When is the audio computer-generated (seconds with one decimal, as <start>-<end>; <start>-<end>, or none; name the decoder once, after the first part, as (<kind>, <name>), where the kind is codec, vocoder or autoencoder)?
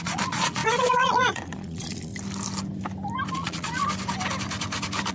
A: 0.0-2.1 (vocoder, Vocos); 3.3-3.8